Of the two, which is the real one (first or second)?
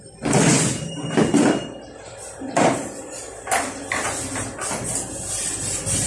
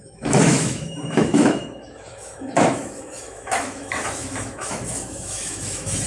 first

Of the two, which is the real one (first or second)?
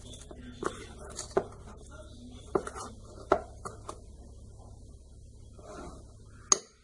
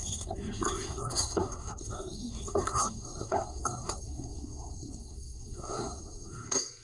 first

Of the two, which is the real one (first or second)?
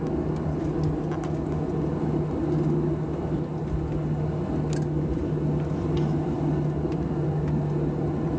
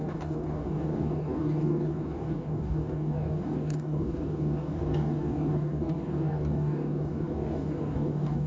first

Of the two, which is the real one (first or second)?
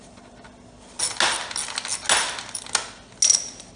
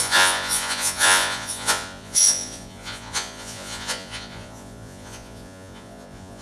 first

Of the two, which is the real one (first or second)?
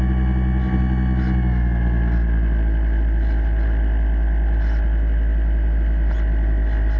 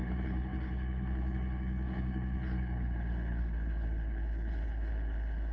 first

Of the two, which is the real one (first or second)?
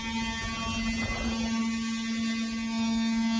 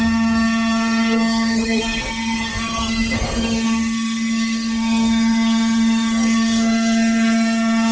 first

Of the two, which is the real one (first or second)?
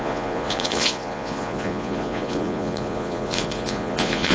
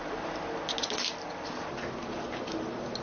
second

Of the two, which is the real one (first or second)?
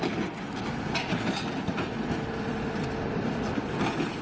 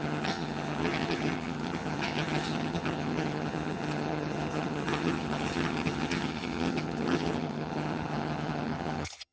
first